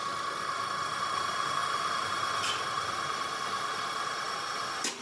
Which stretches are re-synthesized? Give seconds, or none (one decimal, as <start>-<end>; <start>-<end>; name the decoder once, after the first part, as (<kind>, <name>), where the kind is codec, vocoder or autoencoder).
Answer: none